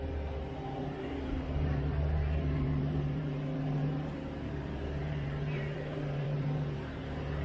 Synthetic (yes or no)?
yes